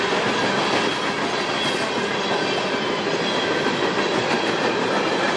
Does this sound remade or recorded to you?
recorded